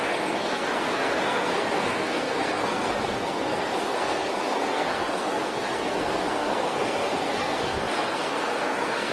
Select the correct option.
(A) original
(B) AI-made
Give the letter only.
B